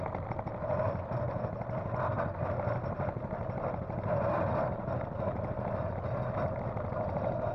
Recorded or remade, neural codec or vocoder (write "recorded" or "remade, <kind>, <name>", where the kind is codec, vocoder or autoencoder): recorded